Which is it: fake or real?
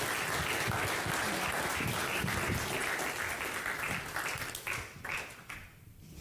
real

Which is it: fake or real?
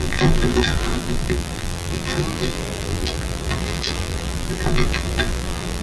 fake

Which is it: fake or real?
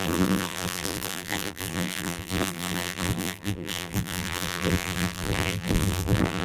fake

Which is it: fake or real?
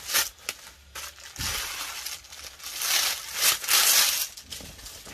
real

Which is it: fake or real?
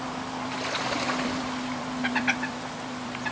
fake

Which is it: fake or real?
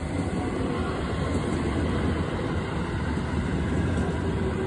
real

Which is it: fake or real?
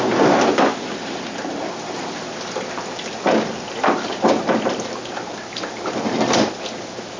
fake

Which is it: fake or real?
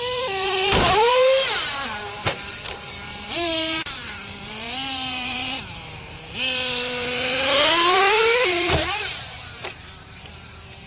fake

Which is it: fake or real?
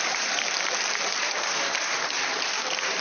fake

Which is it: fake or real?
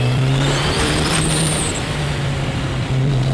fake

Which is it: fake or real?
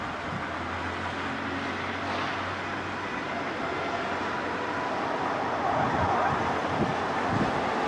real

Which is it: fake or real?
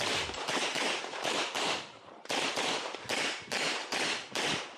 fake